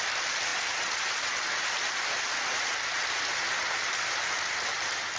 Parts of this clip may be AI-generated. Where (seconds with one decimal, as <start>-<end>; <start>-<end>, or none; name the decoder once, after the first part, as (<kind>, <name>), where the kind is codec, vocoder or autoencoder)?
0.5-3.0 (vocoder, BigVGAN v2)